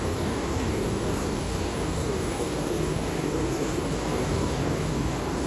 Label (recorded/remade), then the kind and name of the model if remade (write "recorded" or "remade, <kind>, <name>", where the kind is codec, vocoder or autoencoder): remade, codec, DAC